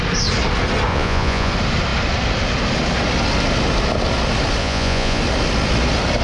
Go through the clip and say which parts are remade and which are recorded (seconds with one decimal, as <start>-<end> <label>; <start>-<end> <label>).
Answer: 0.0-0.9 recorded; 0.9-1.5 remade; 1.5-4.6 recorded; 4.6-5.2 remade; 5.2-6.2 recorded